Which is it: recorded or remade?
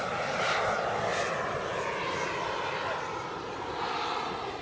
recorded